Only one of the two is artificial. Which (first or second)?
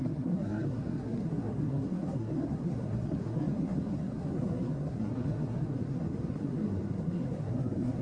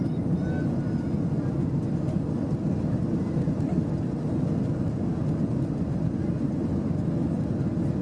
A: first